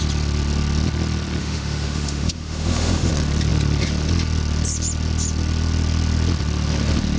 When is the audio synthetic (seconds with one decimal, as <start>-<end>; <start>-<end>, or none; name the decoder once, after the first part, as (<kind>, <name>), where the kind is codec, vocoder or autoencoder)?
1.4-3.1 (autoencoder, DAC-VAE)